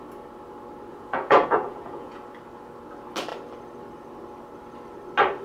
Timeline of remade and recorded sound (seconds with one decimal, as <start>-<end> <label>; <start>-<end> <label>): 0.0-0.9 recorded; 0.9-2.2 remade; 2.2-5.4 recorded